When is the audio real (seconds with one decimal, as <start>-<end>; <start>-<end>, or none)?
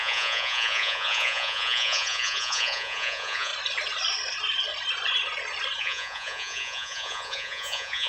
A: 3.5-5.8